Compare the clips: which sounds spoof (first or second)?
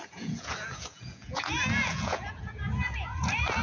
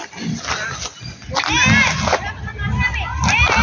first